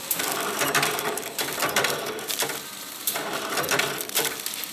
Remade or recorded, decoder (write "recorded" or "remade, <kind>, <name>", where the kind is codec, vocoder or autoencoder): remade, vocoder, BigVGAN v2